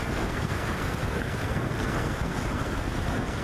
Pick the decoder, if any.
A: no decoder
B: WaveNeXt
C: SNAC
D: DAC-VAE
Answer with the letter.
C